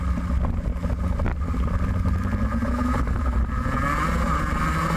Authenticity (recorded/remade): recorded